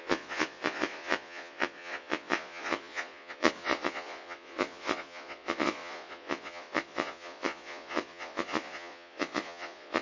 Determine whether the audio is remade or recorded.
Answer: remade